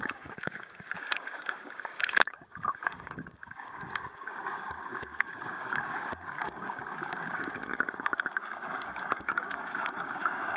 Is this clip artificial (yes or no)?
yes